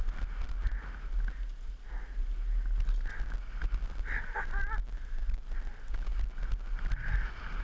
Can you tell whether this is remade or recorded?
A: recorded